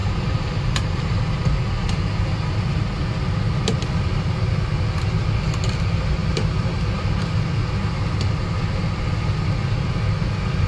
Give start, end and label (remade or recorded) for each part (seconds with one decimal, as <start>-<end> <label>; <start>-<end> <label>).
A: 0.0-1.2 remade; 1.2-10.7 recorded